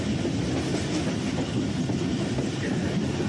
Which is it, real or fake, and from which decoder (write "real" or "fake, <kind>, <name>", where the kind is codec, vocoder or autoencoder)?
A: real